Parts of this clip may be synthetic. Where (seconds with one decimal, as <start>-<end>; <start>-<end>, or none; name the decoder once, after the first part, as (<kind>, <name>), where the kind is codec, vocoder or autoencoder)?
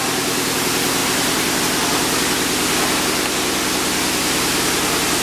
1.0-1.6 (vocoder, BigVGAN v2)